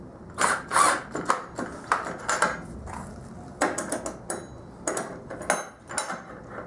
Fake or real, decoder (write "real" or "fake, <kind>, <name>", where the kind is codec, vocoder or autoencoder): real